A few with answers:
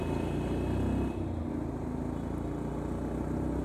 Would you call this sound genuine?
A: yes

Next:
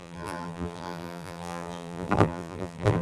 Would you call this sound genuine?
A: no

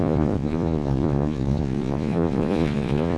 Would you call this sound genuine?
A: no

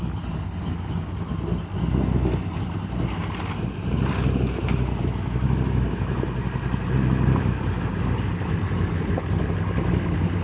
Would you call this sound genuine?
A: yes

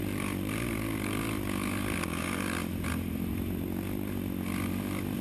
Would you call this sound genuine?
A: yes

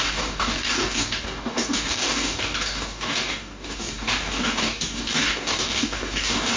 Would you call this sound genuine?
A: no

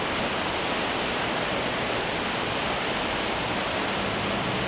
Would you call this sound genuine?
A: yes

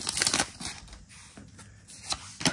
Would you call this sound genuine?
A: yes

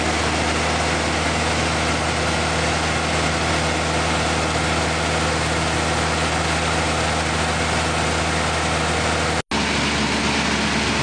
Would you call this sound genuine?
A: yes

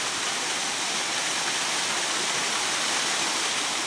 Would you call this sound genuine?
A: yes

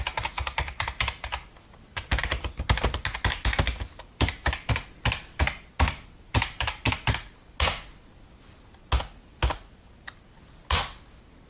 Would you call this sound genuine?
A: yes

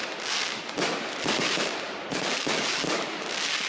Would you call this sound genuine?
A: yes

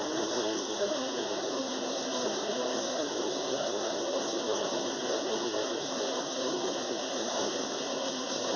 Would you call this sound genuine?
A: no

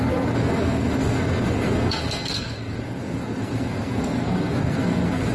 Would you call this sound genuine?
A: no